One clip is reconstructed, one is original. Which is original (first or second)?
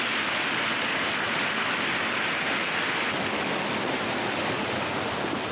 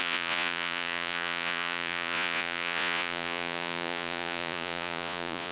first